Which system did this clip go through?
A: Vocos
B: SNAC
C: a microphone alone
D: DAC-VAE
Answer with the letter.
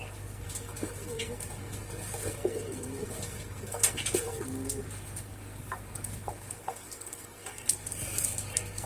B